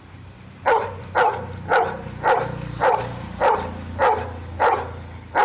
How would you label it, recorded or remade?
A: recorded